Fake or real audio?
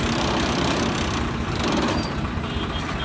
real